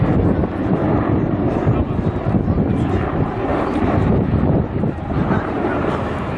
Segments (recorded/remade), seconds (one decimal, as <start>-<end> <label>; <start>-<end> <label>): 0.0-3.5 recorded; 3.5-5.9 remade; 5.9-6.4 recorded